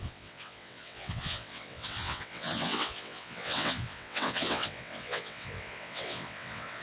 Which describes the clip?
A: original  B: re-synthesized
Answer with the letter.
B